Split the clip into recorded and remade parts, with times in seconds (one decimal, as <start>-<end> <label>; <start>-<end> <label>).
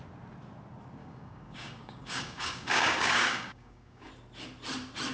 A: 0.0-1.0 recorded; 1.0-4.1 remade; 4.1-5.1 recorded